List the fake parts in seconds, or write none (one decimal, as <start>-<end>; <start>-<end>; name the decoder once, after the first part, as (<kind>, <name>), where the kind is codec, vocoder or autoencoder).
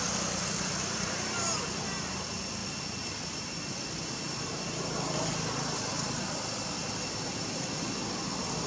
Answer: none